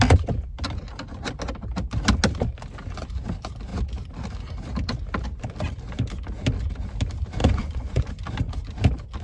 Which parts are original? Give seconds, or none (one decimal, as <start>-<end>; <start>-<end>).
0.0-7.4; 8.1-9.2

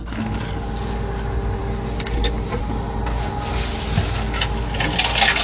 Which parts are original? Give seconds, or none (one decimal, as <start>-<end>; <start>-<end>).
0.0-5.4

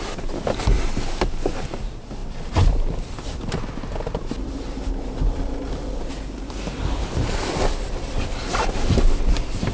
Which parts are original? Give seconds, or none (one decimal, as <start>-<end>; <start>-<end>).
0.0-9.7